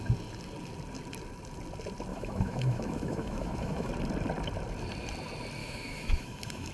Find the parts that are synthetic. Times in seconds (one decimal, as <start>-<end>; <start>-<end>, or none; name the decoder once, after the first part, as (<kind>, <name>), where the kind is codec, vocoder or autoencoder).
2.1-3.9 (autoencoder, DAC-VAE); 5.6-6.7